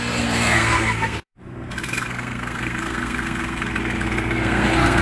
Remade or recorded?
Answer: remade